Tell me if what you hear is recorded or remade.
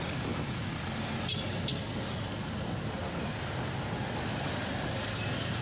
recorded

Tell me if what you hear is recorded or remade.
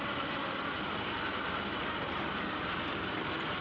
recorded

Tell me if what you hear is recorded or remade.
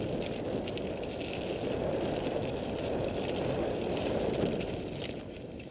recorded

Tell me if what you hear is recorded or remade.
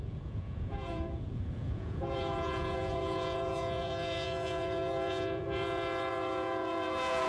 remade